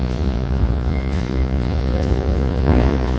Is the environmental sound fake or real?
fake